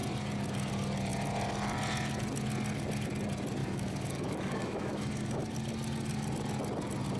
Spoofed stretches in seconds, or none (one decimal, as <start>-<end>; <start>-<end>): 3.6-5.4